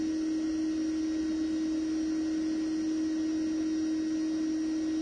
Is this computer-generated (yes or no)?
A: no